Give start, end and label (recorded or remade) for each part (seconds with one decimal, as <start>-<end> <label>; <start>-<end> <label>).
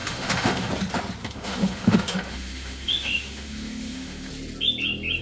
0.0-0.7 remade; 0.7-1.2 recorded; 1.2-4.3 remade; 4.3-5.2 recorded